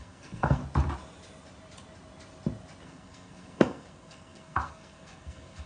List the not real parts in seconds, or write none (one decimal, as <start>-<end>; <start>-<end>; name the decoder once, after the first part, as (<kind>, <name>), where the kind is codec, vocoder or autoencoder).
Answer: 0.0-0.6 (codec, SNAC); 2.8-5.7